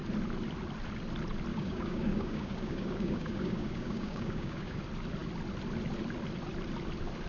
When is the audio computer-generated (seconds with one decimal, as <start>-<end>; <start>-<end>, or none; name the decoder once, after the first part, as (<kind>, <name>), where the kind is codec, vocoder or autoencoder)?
1.5-4.8 (codec, DAC)